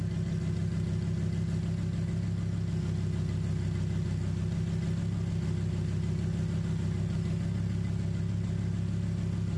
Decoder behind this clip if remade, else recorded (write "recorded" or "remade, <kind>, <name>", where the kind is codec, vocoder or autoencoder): recorded